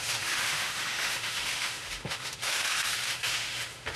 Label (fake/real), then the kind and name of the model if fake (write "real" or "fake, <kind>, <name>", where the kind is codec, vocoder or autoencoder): fake, autoencoder, DAC-VAE